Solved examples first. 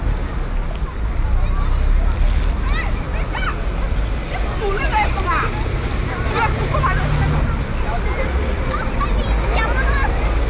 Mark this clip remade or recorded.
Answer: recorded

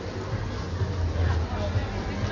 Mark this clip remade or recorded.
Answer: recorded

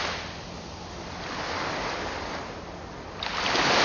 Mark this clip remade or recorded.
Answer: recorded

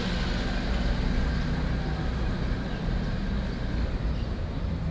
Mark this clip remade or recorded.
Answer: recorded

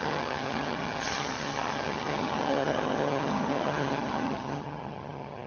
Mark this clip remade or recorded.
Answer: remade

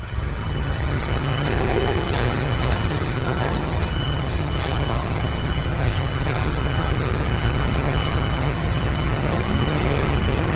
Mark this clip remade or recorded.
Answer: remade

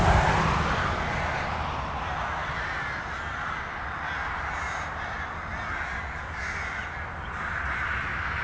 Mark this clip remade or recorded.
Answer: recorded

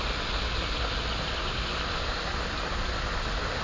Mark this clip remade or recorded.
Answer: recorded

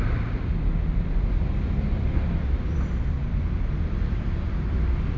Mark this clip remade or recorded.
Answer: recorded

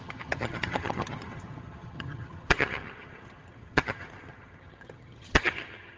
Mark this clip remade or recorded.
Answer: remade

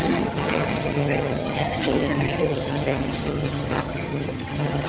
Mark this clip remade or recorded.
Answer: remade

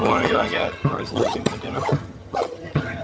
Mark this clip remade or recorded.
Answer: remade